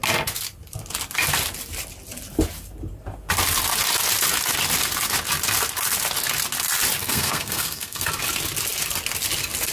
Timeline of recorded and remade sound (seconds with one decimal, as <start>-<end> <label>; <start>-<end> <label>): 0.0-7.0 recorded; 7.0-8.1 remade; 8.1-9.7 recorded